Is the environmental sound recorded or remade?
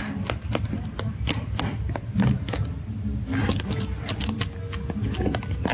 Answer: recorded